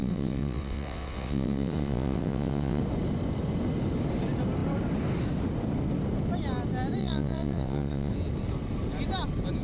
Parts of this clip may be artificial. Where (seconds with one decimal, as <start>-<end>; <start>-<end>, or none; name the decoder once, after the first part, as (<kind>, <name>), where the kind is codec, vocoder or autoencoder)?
0.0-2.8 (vocoder, WaveNeXt); 7.0-8.1